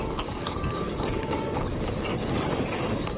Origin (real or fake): fake